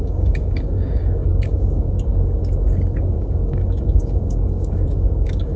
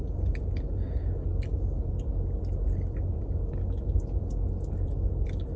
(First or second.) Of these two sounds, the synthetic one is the first